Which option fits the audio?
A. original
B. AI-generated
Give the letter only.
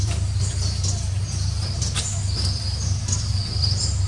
A